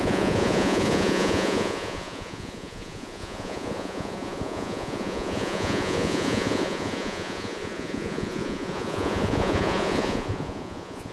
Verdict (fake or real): fake